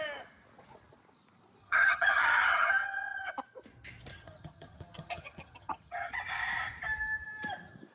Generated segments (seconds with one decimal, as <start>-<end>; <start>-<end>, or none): 1.6-3.3; 4.1-6.1